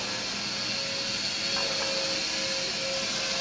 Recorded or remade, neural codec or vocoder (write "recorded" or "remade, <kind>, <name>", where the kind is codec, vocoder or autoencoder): recorded